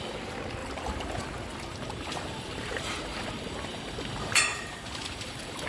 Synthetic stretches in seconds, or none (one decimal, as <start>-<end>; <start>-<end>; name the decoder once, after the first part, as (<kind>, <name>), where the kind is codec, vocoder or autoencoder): 0.6-3.3 (vocoder, BigVGAN v2); 4.5-5.7